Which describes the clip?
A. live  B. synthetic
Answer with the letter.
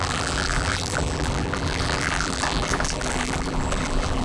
B